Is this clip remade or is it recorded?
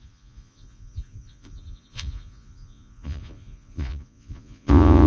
remade